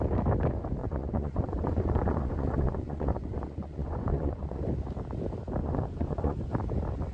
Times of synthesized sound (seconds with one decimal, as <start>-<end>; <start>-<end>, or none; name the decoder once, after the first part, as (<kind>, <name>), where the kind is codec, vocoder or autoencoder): 0.8-4.6 (vocoder, Vocos); 5.6-6.5